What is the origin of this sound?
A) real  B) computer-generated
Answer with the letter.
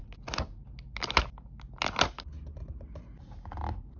A